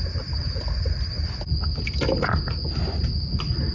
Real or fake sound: real